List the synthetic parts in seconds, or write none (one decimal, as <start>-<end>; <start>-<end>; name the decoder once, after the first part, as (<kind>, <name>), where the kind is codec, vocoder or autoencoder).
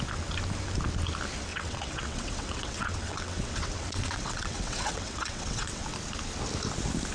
1.5-5.8 (vocoder, WaveNeXt)